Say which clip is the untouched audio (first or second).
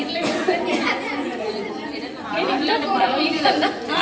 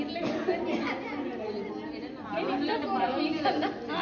second